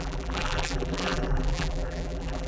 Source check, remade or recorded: remade